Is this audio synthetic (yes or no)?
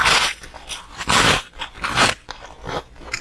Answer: no